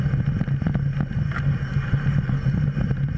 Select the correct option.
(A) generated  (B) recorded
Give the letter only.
B